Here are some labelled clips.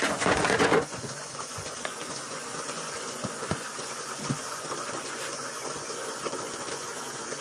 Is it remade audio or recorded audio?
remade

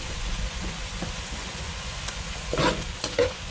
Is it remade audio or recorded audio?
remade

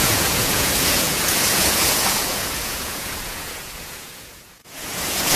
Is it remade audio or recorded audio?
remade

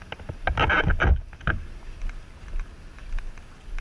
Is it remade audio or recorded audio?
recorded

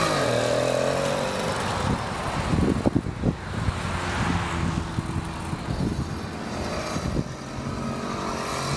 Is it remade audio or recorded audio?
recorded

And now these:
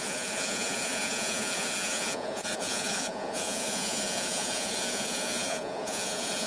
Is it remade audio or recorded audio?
remade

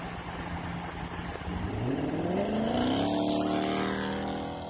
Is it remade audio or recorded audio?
recorded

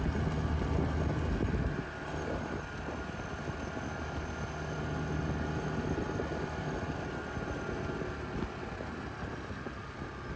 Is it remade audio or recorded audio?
recorded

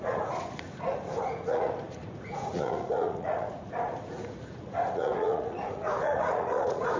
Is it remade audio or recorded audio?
remade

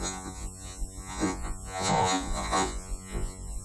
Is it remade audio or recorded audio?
remade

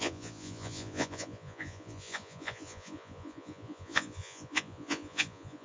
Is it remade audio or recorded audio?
remade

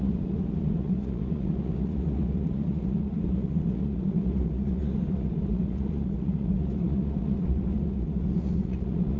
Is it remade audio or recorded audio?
remade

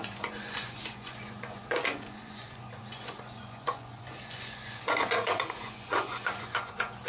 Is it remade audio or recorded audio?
remade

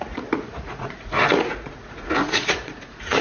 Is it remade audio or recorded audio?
remade